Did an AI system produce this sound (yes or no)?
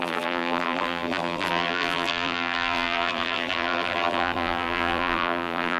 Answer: yes